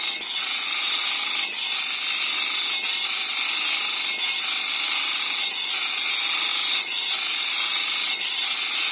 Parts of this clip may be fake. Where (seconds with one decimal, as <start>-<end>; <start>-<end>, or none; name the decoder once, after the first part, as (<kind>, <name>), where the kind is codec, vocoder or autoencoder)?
0.0-1.0 (vocoder, Vocos); 5.2-8.9